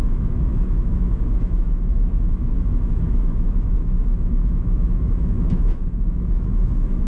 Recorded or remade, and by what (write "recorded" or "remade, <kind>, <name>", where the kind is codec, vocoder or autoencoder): remade, autoencoder, DAC-VAE